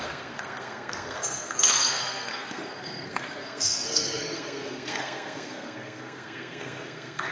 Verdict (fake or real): fake